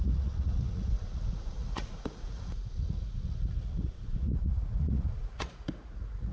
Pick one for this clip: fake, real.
fake